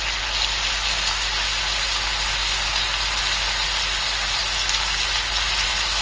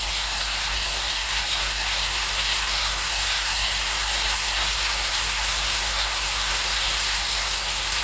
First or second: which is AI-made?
second